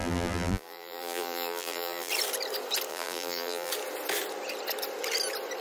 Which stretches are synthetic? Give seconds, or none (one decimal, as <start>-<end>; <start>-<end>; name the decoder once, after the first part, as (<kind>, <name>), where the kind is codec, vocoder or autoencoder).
0.0-2.1 (vocoder, BigVGAN v2); 2.9-3.7